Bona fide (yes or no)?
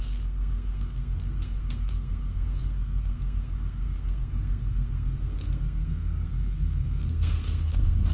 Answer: no